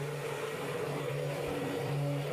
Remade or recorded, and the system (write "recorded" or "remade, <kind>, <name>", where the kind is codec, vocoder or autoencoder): recorded